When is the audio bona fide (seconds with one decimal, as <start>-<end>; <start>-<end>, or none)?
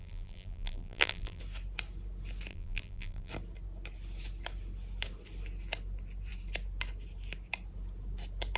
1.4-2.5; 3.3-8.6